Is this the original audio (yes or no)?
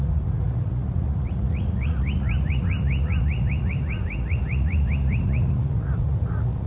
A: no